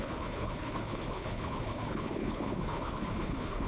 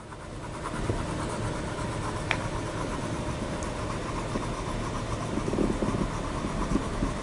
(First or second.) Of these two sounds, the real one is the second